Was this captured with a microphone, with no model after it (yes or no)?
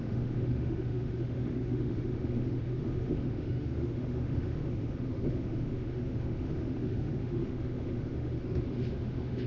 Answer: no